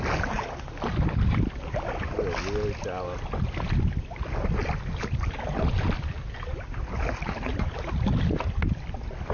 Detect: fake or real real